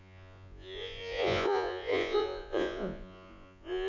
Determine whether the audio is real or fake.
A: fake